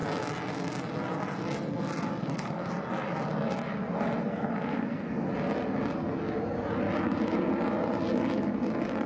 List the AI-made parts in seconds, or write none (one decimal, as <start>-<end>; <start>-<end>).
2.2-2.7; 4.2-5.3